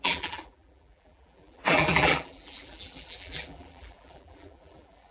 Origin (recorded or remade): remade